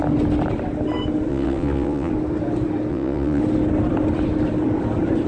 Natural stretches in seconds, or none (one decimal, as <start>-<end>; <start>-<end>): 0.0-1.3; 2.1-2.9; 3.4-5.3